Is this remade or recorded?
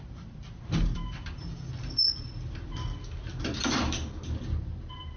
remade